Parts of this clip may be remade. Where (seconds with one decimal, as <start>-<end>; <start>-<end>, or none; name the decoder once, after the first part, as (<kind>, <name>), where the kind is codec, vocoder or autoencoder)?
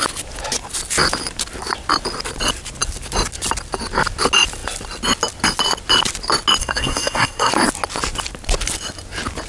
6.6-7.5 (codec, SNAC)